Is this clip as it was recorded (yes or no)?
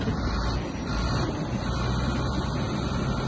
yes